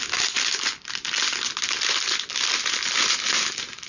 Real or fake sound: real